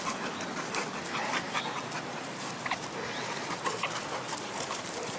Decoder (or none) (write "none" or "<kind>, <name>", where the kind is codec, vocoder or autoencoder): none